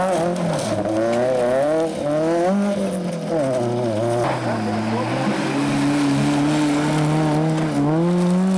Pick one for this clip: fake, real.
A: real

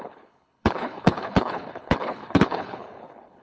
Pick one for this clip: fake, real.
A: fake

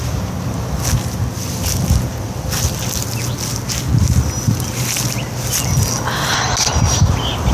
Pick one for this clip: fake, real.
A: real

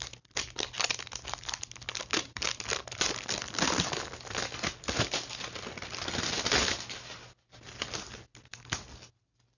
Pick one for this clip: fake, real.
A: real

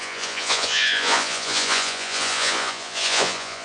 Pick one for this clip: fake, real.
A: fake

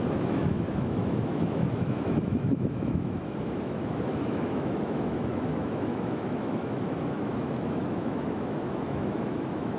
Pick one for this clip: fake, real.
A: fake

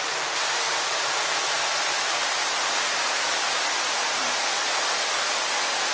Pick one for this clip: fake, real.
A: real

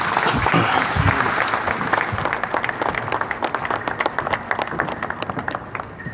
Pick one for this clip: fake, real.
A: real